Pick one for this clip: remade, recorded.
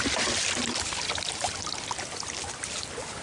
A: recorded